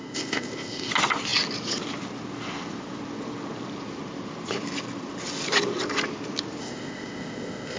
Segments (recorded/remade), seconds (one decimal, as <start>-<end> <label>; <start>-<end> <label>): 0.0-0.9 remade; 0.9-6.6 recorded; 6.6-7.8 remade